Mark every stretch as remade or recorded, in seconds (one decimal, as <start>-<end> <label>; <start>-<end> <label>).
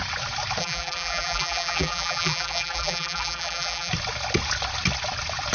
0.0-0.6 recorded; 0.6-3.9 remade; 3.9-5.5 recorded